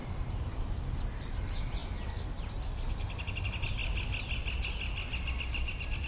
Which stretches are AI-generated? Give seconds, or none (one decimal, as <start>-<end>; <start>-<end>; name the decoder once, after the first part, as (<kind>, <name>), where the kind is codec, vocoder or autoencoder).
0.0-1.3 (vocoder, BigVGAN v2)